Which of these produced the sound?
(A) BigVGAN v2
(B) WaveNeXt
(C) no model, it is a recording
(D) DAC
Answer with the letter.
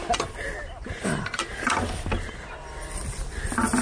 C